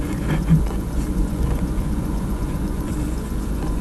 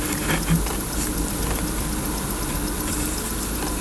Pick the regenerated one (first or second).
first